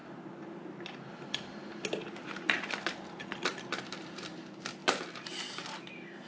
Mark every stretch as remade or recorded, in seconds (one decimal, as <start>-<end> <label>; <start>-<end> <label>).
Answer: 0.0-6.3 recorded